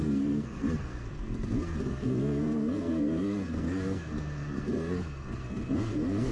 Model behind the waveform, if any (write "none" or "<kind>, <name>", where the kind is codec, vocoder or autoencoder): codec, SNAC